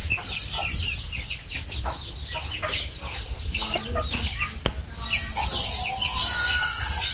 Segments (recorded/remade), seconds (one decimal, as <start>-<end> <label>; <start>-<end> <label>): 0.0-3.1 recorded; 3.1-3.8 remade; 3.8-6.2 recorded; 6.2-7.1 remade